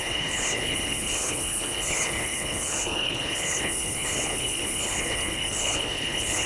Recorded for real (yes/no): no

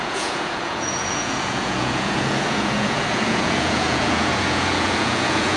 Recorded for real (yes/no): no